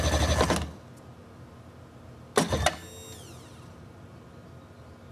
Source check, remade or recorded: recorded